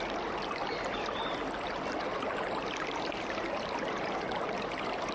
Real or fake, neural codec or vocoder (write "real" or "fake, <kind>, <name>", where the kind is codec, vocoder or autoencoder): real